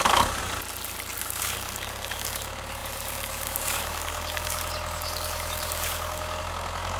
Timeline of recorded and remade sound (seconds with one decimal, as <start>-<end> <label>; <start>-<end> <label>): 0.0-0.4 remade; 0.4-1.2 recorded; 1.2-7.0 remade